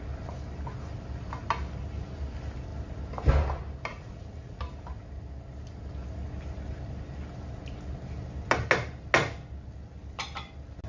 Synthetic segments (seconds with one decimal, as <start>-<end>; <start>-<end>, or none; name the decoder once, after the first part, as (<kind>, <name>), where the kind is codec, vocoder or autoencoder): 3.9-4.6 (vocoder, Vocos)